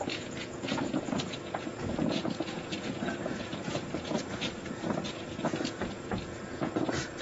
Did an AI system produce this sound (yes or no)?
yes